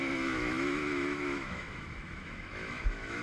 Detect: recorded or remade remade